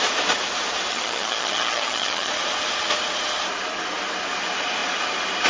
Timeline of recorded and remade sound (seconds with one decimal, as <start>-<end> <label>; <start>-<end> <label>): 0.0-0.9 recorded; 0.9-2.3 remade; 2.3-5.5 recorded